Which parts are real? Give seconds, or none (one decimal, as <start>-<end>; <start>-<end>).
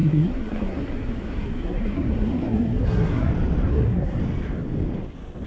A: 3.3-3.7; 4.2-5.5